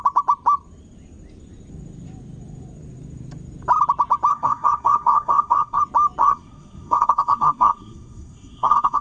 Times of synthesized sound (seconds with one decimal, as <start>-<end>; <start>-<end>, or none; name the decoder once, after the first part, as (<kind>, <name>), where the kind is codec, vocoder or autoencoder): 4.3-5.8 (codec, SNAC); 6.2-9.0